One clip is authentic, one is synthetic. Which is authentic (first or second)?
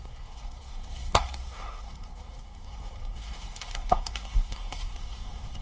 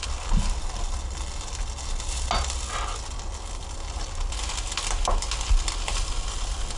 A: second